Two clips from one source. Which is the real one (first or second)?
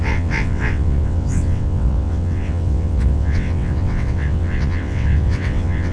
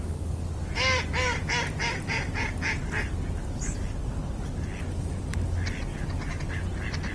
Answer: second